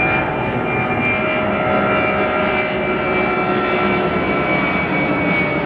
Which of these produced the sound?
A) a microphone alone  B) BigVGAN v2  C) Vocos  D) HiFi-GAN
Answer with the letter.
A